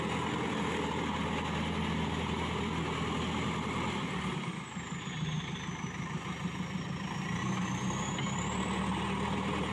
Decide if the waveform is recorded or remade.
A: recorded